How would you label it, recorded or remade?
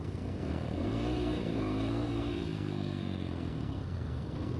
remade